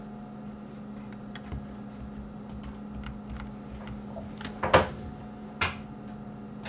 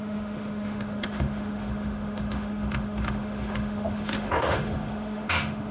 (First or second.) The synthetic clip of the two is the second